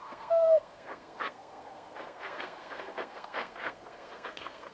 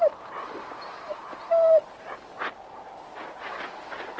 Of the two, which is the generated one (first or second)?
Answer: first